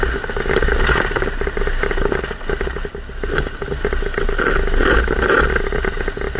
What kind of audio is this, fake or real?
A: real